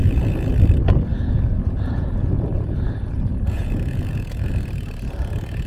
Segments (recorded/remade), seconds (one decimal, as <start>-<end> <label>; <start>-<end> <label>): 0.0-0.5 remade; 0.5-1.1 recorded; 1.1-4.5 remade; 4.5-5.7 recorded